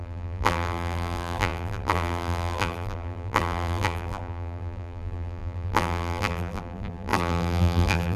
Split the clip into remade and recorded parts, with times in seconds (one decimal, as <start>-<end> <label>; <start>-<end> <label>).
0.0-8.2 remade

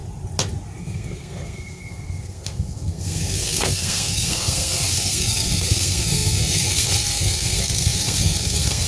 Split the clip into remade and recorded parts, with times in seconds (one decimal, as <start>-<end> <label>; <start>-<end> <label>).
0.0-0.8 recorded; 0.8-8.9 remade

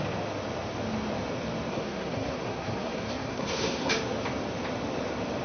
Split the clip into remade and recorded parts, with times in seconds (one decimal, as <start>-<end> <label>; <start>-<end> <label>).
0.0-1.7 recorded; 1.7-3.9 remade; 3.9-5.4 recorded

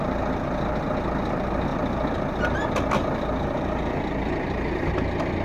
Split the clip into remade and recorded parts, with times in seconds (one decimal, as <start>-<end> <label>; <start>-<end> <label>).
0.0-5.4 recorded

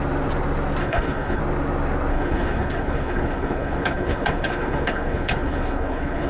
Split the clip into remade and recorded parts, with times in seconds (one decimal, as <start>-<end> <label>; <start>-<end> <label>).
0.0-0.8 recorded; 0.8-1.4 remade; 1.4-2.1 recorded; 2.1-6.3 remade

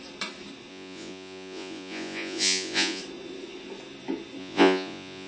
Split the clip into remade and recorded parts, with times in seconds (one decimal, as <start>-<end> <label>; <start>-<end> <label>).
0.0-0.7 recorded; 0.7-3.0 remade; 3.0-4.4 recorded; 4.4-5.3 remade